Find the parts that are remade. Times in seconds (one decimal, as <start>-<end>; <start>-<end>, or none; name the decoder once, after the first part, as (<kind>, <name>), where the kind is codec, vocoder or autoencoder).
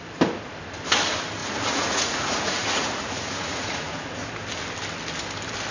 1.4-3.9 (vocoder, Vocos)